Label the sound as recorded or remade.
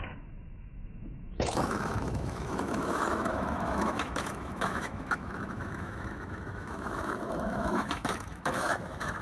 remade